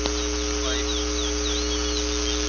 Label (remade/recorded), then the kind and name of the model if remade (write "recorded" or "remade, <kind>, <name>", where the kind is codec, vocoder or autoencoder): recorded